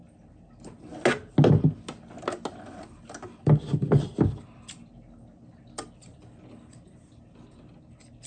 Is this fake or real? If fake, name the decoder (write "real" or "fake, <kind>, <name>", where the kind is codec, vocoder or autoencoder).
real